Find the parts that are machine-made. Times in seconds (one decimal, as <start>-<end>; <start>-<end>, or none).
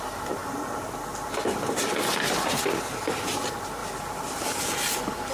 3.8-4.4